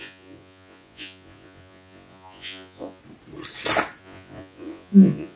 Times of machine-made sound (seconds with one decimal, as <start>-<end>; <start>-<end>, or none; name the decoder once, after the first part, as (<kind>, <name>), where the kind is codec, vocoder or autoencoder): 0.0-3.0 (vocoder, Vocos); 4.0-5.4